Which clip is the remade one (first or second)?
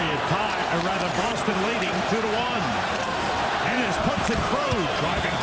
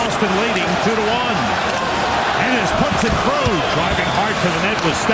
first